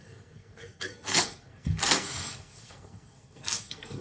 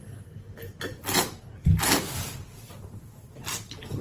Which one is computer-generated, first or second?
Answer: first